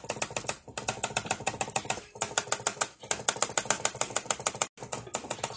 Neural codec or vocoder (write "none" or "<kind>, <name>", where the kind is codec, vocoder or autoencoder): none